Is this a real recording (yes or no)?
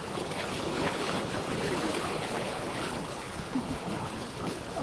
no